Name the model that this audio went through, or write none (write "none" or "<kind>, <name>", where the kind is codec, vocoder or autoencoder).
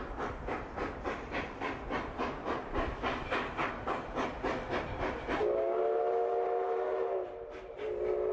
none